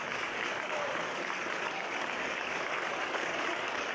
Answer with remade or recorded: remade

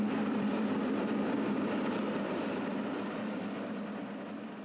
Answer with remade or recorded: remade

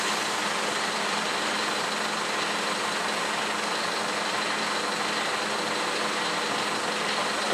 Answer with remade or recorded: recorded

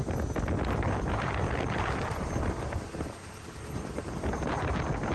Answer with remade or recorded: recorded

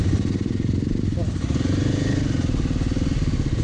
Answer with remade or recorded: recorded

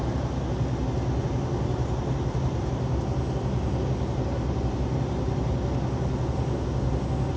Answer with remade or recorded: recorded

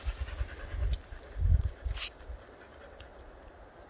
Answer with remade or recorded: recorded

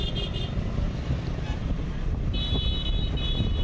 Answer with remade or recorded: recorded